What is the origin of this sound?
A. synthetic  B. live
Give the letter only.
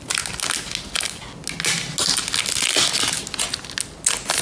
B